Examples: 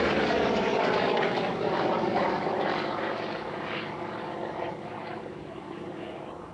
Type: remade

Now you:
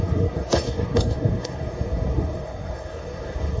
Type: remade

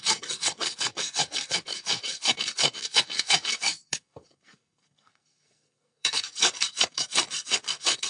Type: remade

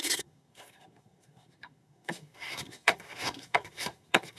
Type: remade